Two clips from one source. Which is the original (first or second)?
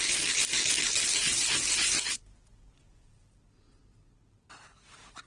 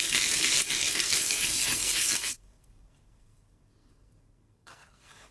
first